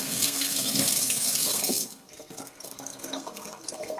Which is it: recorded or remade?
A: remade